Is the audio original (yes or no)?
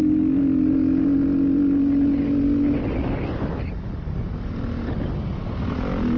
yes